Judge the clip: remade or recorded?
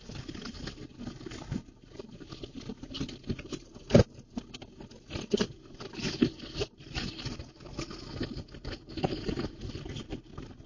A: recorded